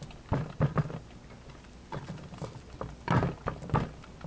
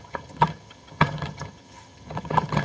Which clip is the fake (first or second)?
second